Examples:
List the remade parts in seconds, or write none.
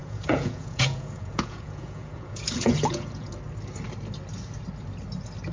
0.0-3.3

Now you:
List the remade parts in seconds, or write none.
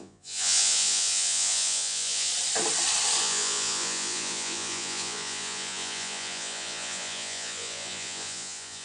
0.0-2.3; 3.2-8.8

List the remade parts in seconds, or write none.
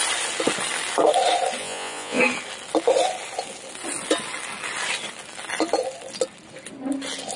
1.6-2.2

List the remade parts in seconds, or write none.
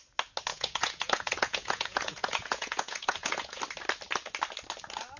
0.5-3.6